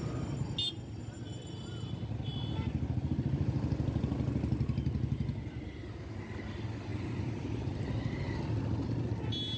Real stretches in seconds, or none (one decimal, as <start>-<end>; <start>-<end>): 0.0-6.9; 7.6-9.6